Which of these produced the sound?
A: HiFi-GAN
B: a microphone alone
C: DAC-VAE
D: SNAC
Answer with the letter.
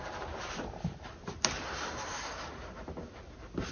B